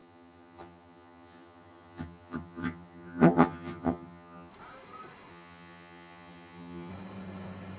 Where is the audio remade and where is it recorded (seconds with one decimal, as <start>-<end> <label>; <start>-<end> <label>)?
0.0-4.5 remade; 4.5-5.3 recorded; 5.3-6.9 remade; 6.9-7.8 recorded